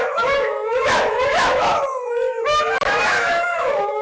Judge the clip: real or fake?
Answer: fake